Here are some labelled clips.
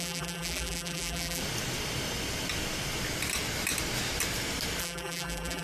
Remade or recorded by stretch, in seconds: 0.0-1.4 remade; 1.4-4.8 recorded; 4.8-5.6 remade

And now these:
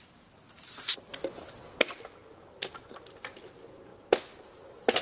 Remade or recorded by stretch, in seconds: 0.0-5.0 recorded

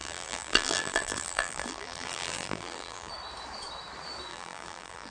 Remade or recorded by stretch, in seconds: 0.0-3.1 remade; 3.1-4.3 recorded; 4.3-5.1 remade

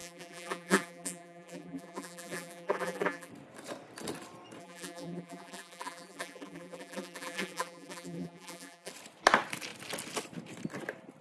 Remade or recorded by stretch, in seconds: 0.0-3.3 remade; 3.3-4.6 recorded; 4.6-8.9 remade; 8.9-11.2 recorded

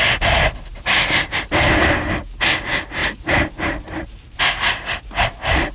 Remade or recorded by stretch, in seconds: 0.0-3.0 recorded; 3.0-4.4 remade; 4.4-5.7 recorded